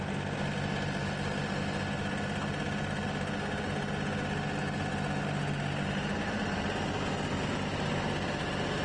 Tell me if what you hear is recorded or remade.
recorded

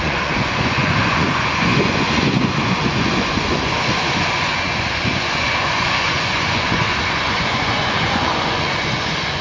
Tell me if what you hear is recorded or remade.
remade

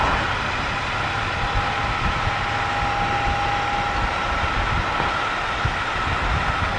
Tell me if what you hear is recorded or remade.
recorded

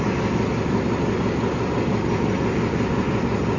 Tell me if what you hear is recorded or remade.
recorded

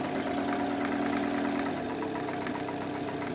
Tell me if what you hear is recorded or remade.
recorded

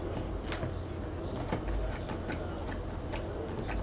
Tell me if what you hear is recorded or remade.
recorded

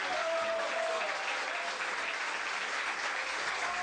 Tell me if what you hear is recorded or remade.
recorded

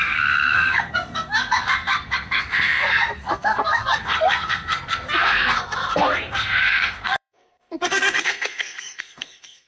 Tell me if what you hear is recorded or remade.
remade